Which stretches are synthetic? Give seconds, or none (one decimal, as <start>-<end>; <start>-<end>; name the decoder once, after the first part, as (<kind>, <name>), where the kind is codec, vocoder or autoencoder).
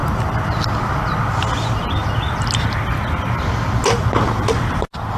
none